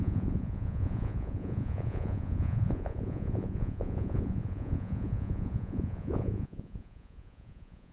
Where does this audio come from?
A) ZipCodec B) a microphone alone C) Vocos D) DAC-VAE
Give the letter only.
C